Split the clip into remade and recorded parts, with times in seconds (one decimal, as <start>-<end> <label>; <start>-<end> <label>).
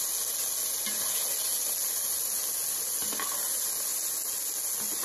0.0-5.0 recorded